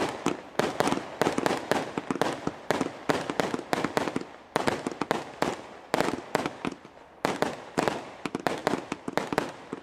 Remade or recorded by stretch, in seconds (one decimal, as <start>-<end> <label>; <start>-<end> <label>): 0.0-9.8 recorded